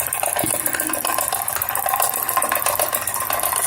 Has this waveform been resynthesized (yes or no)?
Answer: no